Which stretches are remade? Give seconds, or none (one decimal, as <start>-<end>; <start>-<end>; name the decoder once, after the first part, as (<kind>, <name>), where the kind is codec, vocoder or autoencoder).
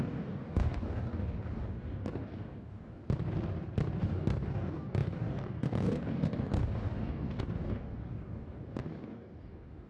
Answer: 0.0-3.0 (codec, DAC); 4.0-9.9